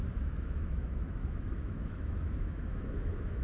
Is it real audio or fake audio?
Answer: fake